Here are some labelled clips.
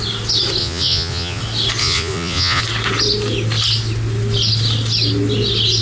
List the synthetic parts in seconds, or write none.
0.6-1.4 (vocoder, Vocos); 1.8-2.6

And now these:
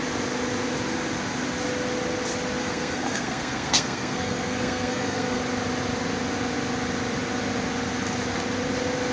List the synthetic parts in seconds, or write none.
2.6-5.4 (codec, SNAC)

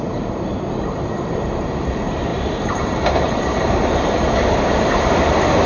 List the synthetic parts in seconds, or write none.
0.0-5.7 (vocoder, BigVGAN v2)

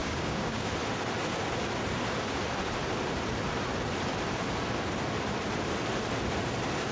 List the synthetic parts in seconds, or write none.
0.0-0.7 (codec, DAC)

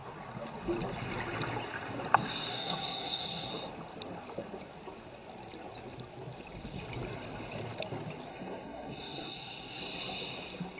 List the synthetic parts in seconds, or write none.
2.5-3.5 (codec, SNAC); 8.3-9.8

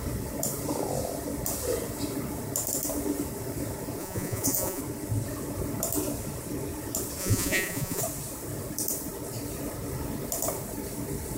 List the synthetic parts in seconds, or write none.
4.0-4.8 (vocoder, Vocos); 7.2-8.0

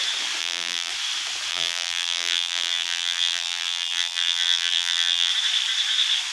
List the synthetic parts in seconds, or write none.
0.4-0.9 (vocoder, BigVGAN v2); 1.5-5.3

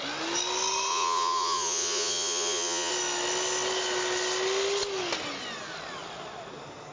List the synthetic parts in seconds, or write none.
0.9-2.9 (vocoder, Vocos)